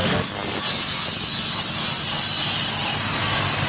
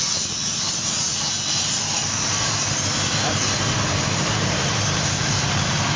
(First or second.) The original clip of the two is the first